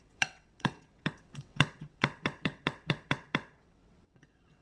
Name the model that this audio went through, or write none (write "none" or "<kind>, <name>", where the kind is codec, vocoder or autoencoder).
vocoder, WaveNeXt